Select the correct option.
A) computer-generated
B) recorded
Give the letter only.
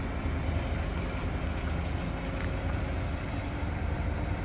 B